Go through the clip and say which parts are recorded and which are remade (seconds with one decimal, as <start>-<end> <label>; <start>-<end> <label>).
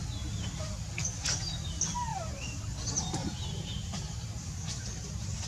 0.0-2.1 recorded; 2.1-2.6 remade; 2.6-3.2 recorded; 3.2-5.5 remade